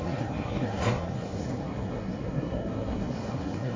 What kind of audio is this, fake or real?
fake